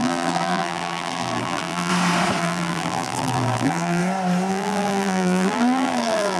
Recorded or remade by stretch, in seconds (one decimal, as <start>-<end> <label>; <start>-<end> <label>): 0.0-1.9 remade; 1.9-2.4 recorded; 2.4-4.0 remade; 4.0-4.5 recorded; 4.5-6.4 remade